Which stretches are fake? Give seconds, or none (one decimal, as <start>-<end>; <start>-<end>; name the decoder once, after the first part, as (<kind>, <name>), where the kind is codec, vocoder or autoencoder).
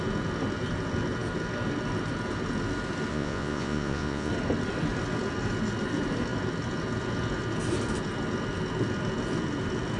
3.1-4.3 (vocoder, Vocos)